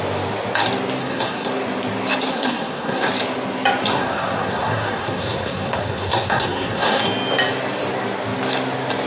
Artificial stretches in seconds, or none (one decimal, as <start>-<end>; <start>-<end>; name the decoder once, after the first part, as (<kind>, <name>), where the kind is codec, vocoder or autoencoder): 1.0-1.5 (codec, SNAC); 2.3-3.1; 3.9-7.0